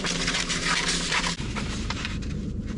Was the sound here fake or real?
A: fake